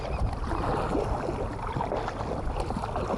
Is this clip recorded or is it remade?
recorded